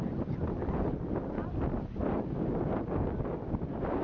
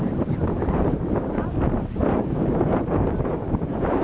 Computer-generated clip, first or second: second